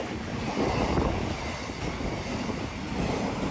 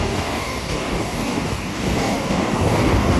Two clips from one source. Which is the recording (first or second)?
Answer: first